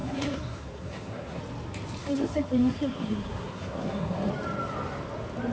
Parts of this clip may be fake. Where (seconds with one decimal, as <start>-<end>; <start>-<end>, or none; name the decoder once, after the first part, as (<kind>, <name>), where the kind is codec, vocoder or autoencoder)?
0.0-1.4 (codec, SNAC); 2.0-4.3